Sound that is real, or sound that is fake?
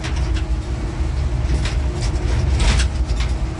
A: real